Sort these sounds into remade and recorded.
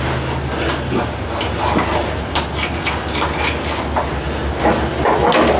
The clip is recorded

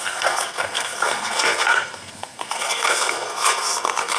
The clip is remade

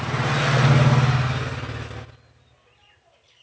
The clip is recorded